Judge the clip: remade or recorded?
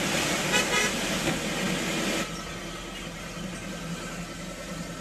recorded